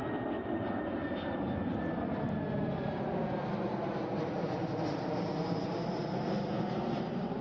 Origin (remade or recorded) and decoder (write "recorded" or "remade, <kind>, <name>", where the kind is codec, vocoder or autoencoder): recorded